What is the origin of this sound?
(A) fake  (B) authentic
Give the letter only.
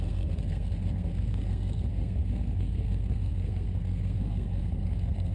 A